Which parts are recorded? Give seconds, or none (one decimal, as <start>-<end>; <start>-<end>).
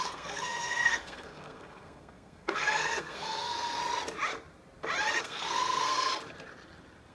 3.8-5.2; 6.1-7.1